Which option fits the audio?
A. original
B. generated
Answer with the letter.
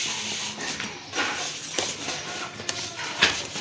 A